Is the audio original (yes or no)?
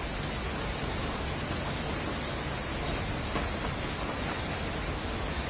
yes